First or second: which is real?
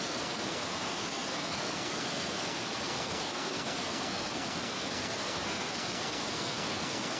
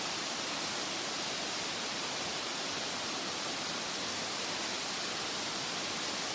second